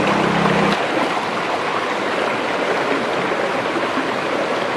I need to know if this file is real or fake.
real